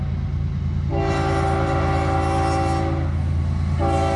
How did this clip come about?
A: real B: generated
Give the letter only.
A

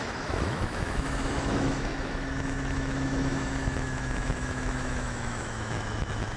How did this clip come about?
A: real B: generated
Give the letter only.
B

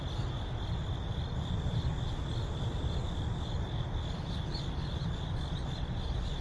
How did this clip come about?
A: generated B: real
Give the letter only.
B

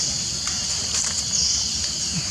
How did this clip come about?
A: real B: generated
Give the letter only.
A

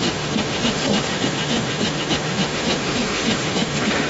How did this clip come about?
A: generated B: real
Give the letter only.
A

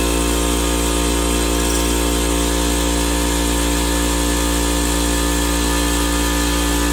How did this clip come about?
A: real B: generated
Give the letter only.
A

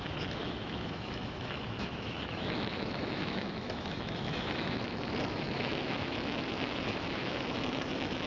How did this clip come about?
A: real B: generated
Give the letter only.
B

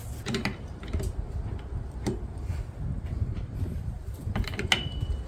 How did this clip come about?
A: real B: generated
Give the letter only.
A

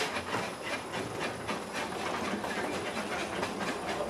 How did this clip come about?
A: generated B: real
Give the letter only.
B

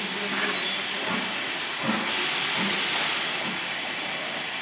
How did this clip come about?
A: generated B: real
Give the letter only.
B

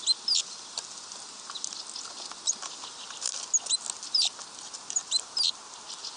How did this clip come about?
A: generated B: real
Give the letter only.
B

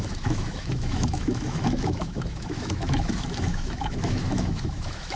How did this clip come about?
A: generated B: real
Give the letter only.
A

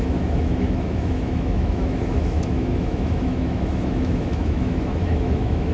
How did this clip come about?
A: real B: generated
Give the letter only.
B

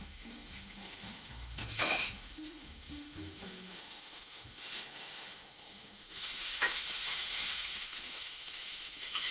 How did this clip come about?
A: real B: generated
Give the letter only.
B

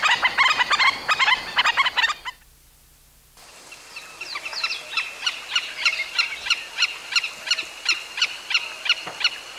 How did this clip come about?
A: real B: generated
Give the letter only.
A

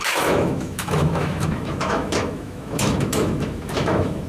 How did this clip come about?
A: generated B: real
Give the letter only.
A